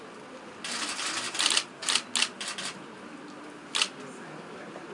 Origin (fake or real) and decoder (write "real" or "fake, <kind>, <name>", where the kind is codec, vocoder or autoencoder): real